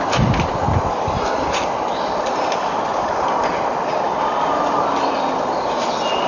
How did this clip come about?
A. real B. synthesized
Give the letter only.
A